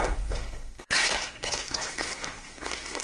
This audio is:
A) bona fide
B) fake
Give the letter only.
B